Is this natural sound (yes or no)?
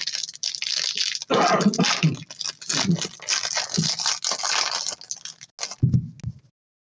yes